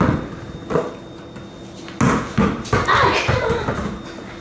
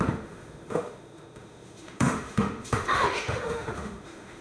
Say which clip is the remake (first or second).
second